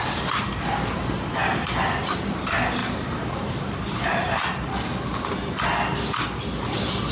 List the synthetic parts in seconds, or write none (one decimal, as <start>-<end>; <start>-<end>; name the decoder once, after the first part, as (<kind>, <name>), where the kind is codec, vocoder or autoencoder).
2.8-4.7 (vocoder, BigVGAN v2)